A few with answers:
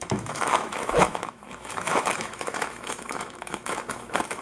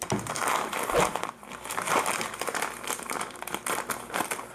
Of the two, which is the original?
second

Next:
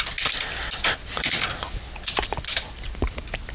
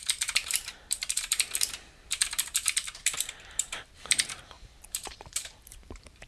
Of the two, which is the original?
first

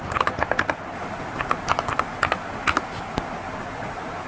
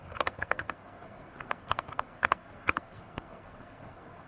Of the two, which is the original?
first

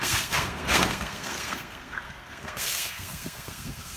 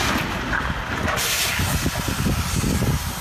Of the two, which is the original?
second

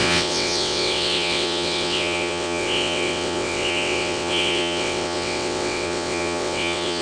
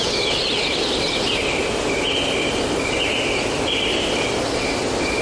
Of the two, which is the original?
second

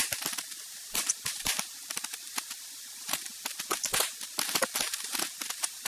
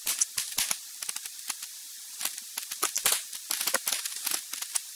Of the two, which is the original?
second